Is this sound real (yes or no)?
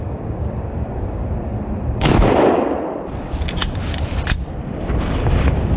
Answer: no